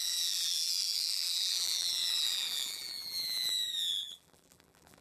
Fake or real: fake